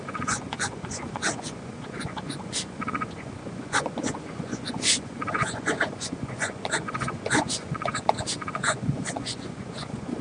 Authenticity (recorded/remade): remade